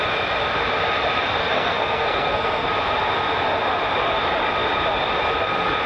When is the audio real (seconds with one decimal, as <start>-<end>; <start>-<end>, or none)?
0.0-1.4; 2.7-5.9